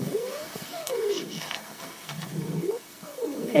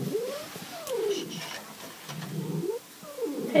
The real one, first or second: second